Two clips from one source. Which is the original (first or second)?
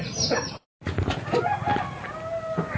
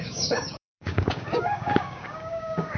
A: first